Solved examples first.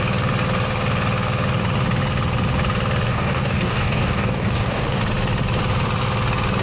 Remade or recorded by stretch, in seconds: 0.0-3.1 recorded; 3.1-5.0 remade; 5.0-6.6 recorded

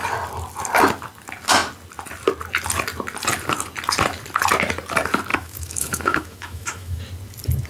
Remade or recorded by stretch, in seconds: 0.0-5.3 recorded; 5.3-7.0 remade; 7.0-7.7 recorded

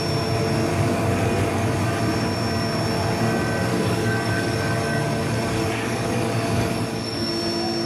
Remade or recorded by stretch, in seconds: 0.0-0.7 recorded; 0.7-2.0 remade; 2.0-3.7 recorded; 3.7-7.3 remade; 7.3-7.9 recorded

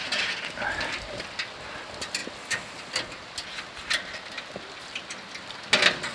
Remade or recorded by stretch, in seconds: 0.0-6.1 recorded

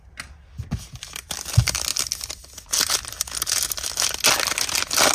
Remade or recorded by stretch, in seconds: 0.0-5.1 recorded

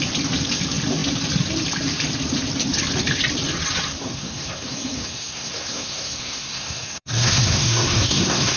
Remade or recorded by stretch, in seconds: 0.0-4.0 recorded; 4.0-8.6 remade

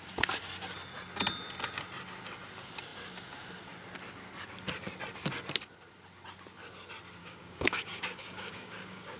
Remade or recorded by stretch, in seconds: 0.0-7.2 recorded; 7.2-9.2 remade